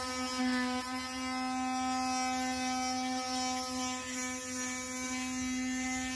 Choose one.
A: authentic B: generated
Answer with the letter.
A